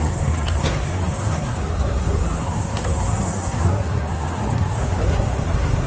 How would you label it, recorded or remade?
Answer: remade